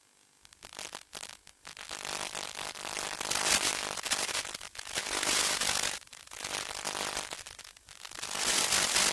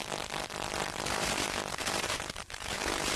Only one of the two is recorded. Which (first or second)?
first